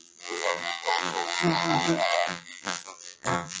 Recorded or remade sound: remade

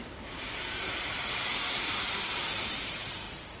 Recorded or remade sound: remade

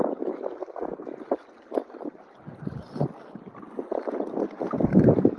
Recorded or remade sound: recorded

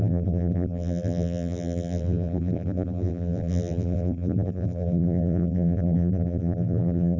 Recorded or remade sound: remade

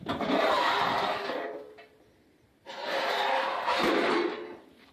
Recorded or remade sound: remade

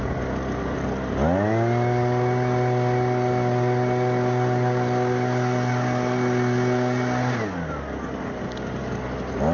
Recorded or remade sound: recorded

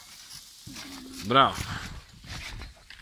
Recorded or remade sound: recorded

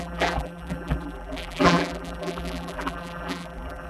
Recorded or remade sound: remade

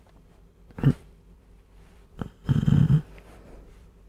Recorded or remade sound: remade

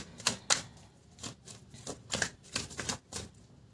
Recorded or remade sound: recorded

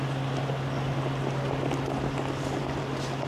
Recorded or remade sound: recorded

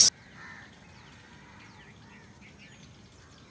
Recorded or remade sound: recorded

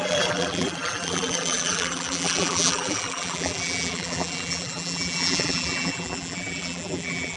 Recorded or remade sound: remade